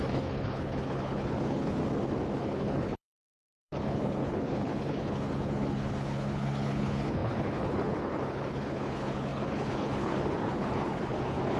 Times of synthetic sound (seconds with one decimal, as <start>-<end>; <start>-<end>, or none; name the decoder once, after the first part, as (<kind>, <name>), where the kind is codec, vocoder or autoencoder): 0.0-1.8 (codec, HILCodec); 2.4-11.6